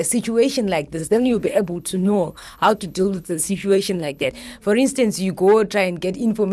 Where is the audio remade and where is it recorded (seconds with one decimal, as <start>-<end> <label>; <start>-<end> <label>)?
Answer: 0.0-1.0 recorded; 1.0-4.3 remade; 4.3-6.5 recorded